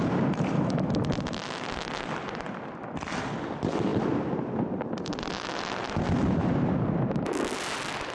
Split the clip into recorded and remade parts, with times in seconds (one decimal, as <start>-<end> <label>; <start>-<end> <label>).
0.0-8.1 recorded